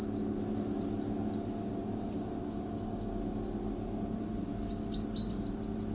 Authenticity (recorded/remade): recorded